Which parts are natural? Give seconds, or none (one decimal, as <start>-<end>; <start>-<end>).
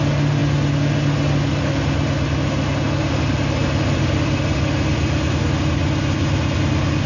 0.0-7.1